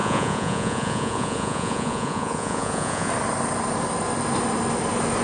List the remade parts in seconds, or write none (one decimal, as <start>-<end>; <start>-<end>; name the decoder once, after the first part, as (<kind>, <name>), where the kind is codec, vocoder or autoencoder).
0.0-3.1 (vocoder, Vocos)